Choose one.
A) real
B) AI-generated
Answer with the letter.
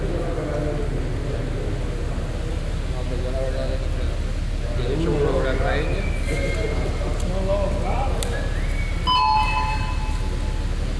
A